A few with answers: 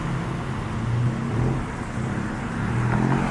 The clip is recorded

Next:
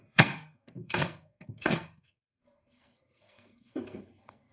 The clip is remade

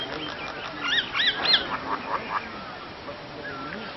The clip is recorded